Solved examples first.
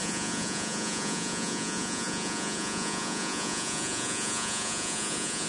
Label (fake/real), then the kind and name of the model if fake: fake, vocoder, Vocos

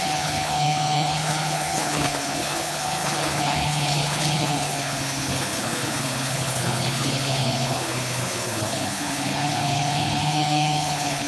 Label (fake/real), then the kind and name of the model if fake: fake, codec, HILCodec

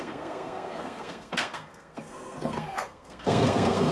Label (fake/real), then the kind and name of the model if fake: fake, codec, SNAC